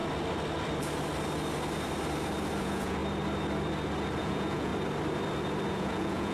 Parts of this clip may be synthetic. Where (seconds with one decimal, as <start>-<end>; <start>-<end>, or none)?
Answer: 2.6-3.0; 4.2-4.7; 5.7-6.3